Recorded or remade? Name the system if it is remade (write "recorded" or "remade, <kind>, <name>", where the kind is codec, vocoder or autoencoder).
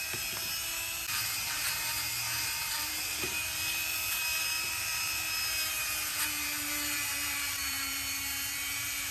remade, vocoder, BigVGAN v2